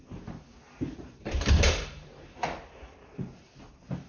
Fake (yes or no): yes